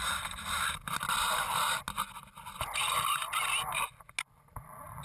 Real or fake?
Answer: real